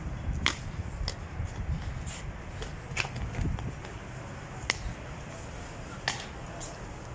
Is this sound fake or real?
real